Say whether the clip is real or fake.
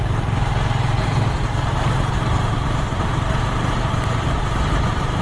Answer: fake